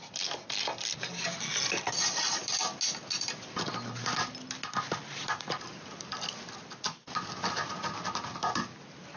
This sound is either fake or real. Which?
real